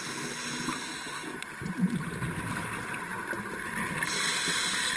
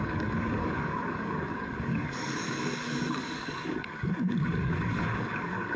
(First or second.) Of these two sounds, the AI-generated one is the second